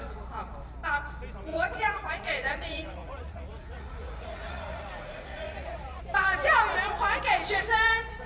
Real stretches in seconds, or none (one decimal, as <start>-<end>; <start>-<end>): 0.0-1.5; 6.0-8.3